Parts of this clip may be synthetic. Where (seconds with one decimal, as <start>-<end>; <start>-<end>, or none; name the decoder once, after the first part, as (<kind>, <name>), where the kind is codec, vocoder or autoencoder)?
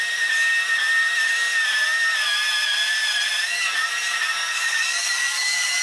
4.4-5.8 (codec, DAC)